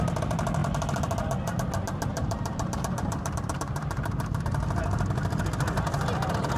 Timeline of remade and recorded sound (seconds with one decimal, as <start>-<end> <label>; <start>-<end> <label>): 0.0-2.1 recorded; 2.1-5.4 remade; 5.4-6.6 recorded